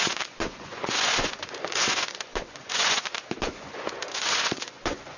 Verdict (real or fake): fake